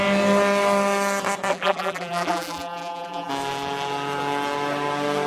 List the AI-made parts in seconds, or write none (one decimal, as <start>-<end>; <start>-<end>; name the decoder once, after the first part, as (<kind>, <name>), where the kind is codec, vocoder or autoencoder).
1.5-3.3 (vocoder, BigVGAN v2)